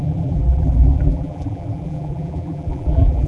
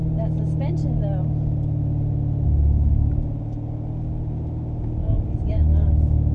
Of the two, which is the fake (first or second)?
first